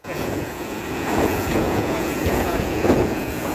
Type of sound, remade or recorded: remade